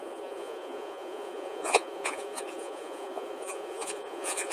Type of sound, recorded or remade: remade